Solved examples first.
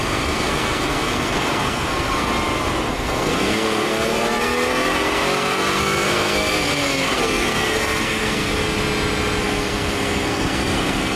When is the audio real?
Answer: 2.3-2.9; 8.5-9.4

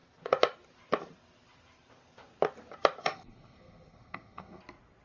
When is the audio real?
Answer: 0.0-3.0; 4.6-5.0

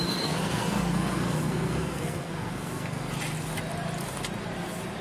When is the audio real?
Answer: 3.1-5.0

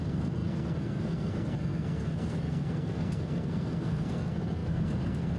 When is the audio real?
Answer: none

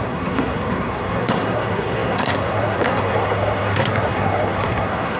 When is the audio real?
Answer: none

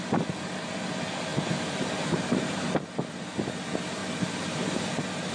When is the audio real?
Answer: 0.0-5.3

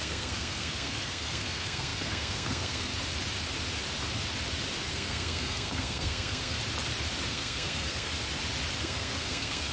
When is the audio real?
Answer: 2.9-4.9; 6.6-7.3; 8.1-8.8

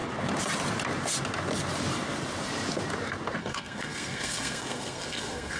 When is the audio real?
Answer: 0.0-3.4